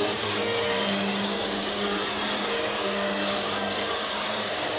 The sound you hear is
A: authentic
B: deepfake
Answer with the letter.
B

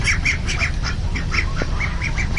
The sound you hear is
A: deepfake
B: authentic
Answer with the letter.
A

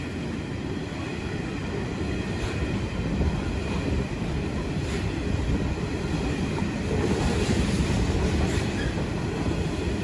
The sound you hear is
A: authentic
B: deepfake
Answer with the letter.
A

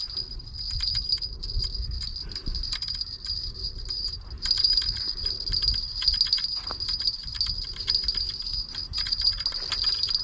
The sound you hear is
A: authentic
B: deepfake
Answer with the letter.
A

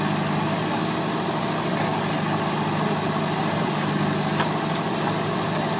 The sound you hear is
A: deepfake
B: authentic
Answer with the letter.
B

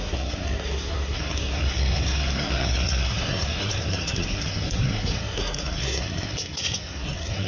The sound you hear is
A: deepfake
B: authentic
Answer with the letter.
A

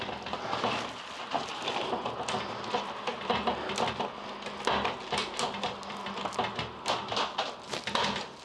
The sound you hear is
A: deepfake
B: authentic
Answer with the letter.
B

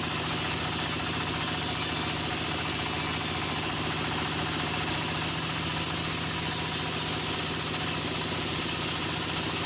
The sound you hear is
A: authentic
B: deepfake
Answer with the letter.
A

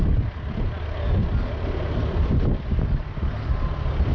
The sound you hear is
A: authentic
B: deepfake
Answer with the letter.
A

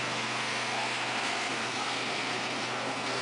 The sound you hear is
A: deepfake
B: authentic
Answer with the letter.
A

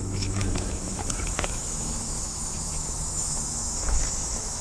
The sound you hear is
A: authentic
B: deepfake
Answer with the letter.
B